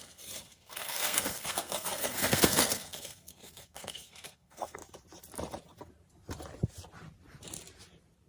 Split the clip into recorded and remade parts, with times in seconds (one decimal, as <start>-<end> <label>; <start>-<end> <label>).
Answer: 0.0-4.8 remade; 4.8-8.3 recorded